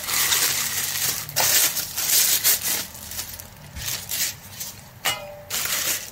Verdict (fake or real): real